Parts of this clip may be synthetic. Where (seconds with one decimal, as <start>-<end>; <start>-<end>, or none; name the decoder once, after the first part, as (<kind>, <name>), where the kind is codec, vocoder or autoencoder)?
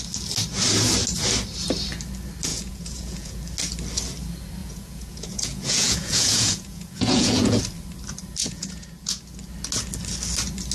2.5-3.4 (vocoder, Vocos); 4.6-7.6; 8.4-9.2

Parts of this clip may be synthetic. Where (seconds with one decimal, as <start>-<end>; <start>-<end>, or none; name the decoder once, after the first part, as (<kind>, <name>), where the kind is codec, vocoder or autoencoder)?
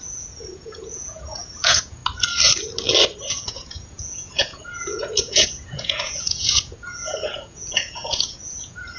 0.0-2.0 (vocoder, Vocos); 3.3-9.0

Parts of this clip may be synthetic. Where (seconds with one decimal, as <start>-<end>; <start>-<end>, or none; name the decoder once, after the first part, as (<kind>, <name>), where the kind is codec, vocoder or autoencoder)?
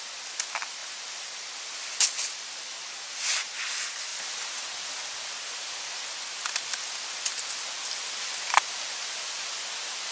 4.1-4.9 (vocoder, BigVGAN v2); 7.8-8.6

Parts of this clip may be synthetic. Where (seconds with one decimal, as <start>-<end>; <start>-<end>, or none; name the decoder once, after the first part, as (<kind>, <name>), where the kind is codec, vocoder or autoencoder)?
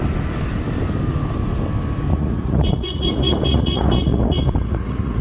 2.1-5.2 (vocoder, Vocos)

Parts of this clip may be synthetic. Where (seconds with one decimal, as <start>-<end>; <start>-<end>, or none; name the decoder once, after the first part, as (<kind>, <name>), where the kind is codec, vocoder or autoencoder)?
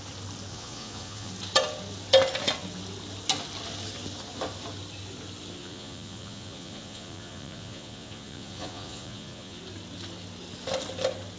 0.5-1.3 (vocoder, Vocos); 5.6-9.6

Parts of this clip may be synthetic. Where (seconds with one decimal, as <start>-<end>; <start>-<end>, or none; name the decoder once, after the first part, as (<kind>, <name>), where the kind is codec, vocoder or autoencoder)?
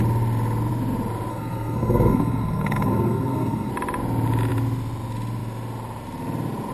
1.3-3.7 (codec, SNAC)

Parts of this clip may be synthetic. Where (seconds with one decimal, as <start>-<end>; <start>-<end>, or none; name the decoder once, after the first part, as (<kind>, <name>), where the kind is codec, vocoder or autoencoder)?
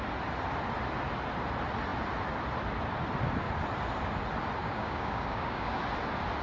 4.6-5.8 (codec, DAC)